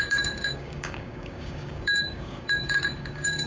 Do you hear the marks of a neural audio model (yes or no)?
yes